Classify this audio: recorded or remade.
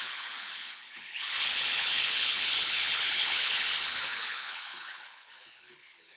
remade